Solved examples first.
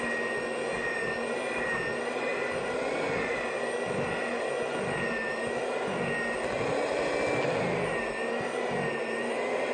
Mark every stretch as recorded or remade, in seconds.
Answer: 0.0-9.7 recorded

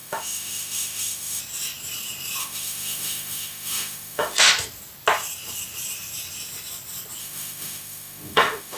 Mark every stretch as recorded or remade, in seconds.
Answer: 0.0-1.4 remade; 1.4-2.4 recorded; 2.4-4.5 remade; 4.5-7.2 recorded; 7.2-8.8 remade

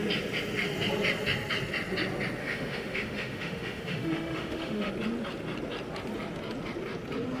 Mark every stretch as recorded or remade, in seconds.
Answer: 0.0-2.4 recorded; 2.4-4.9 remade; 4.9-7.4 recorded

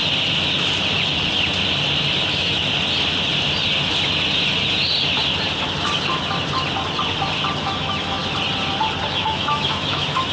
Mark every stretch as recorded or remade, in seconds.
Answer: 0.0-2.3 recorded; 2.3-2.7 remade; 2.7-7.6 recorded; 7.6-8.2 remade; 8.2-9.1 recorded; 9.1-10.3 remade

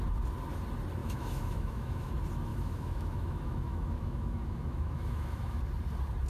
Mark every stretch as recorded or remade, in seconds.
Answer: 0.0-1.0 recorded; 1.0-2.1 remade; 2.1-2.5 recorded; 2.5-5.6 remade; 5.6-6.3 recorded

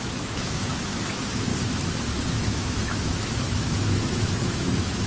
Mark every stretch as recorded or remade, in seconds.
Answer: 0.0-1.5 remade; 1.5-2.3 recorded; 2.3-5.1 remade

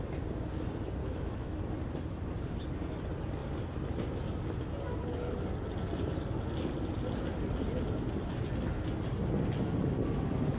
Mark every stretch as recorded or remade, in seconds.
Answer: 0.0-1.0 recorded; 1.0-1.6 remade; 1.6-10.6 recorded